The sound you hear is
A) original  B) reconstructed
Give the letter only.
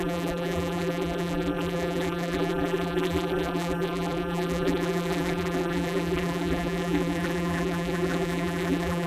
B